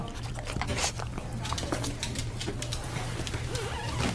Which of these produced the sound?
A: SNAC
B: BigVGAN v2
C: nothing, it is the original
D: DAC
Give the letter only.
C